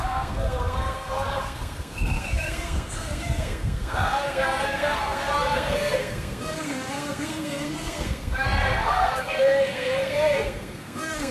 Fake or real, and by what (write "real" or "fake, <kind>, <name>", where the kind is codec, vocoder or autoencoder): fake, codec, SNAC